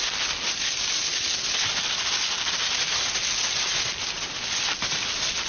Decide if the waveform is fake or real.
real